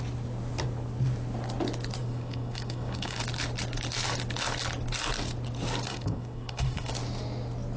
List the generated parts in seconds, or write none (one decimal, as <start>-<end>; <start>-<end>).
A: 2.0-3.2; 5.9-6.9